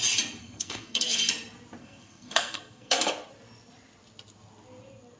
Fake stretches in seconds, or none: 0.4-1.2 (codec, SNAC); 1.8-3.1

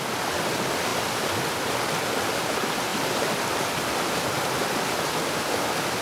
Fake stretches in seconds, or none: none